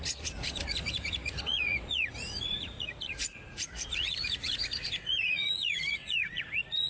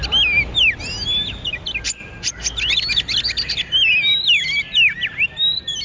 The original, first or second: second